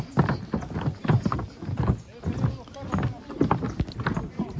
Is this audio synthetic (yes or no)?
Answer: no